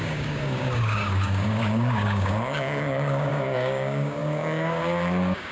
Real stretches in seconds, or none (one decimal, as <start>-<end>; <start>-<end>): none